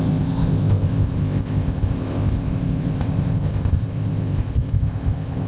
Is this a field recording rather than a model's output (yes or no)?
no